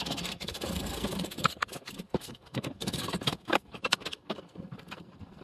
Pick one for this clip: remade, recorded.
remade